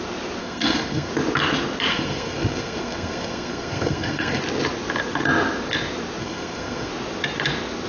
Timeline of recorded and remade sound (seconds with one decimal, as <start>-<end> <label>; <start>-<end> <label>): 0.0-0.4 recorded; 0.4-1.1 remade; 1.1-1.9 recorded; 1.9-4.4 remade; 4.4-6.2 recorded; 6.2-6.9 remade; 6.9-7.9 recorded